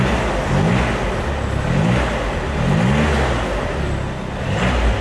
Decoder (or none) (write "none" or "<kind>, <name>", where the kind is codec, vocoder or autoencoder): none